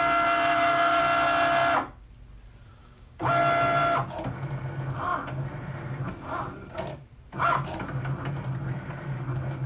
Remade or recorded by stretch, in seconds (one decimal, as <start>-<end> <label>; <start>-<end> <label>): 0.0-0.5 recorded; 0.5-1.0 remade; 1.0-2.8 recorded; 2.8-3.4 remade; 3.4-9.7 recorded